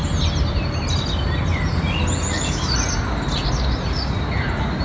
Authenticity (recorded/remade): recorded